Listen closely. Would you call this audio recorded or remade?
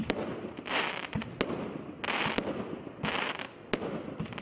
recorded